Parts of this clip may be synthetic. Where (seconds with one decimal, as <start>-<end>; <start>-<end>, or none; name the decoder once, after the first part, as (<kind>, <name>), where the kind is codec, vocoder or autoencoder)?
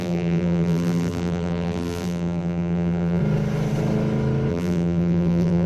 0.0-3.2 (vocoder, BigVGAN v2); 4.5-5.7